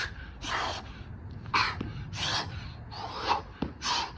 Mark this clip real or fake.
real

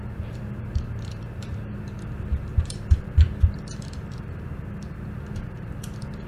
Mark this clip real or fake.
fake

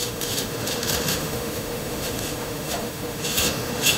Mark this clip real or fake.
fake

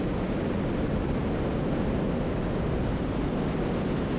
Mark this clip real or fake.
real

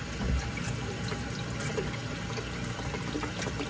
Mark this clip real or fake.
real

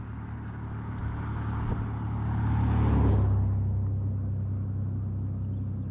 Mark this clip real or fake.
real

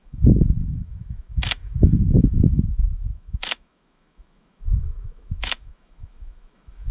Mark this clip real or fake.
fake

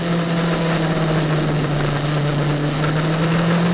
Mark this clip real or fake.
real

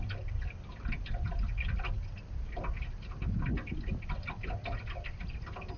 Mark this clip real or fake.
real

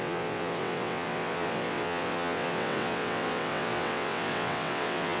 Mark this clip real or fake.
fake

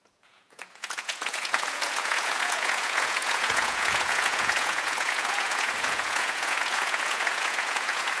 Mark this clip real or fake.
fake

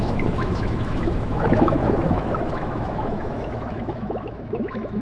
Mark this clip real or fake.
fake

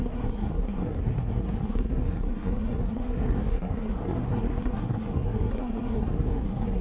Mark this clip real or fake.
fake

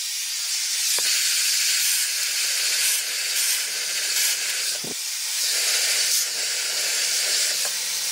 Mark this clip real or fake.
fake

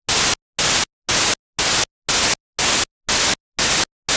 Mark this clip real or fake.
real